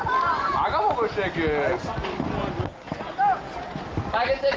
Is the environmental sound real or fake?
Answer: real